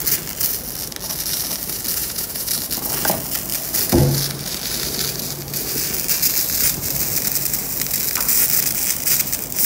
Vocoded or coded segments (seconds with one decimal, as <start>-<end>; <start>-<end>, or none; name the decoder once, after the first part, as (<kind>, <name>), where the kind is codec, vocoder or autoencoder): 2.0-2.5 (vocoder, Vocos)